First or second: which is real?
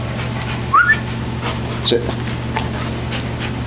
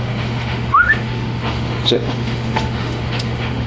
first